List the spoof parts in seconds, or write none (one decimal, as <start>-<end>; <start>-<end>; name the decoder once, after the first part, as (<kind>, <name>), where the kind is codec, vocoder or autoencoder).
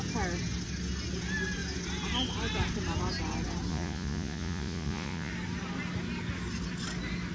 3.7-5.3 (vocoder, Vocos)